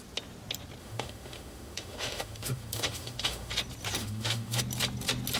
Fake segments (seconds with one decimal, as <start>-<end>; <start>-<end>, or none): 0.8-3.5; 4.0-4.6